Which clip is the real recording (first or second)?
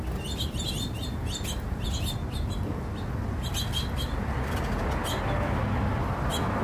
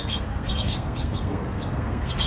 first